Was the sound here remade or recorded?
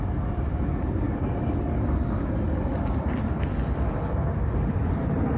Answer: recorded